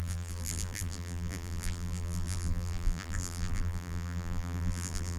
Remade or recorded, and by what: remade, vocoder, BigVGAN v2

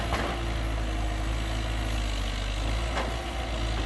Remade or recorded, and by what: recorded